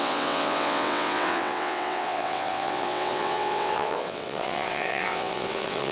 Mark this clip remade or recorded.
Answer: remade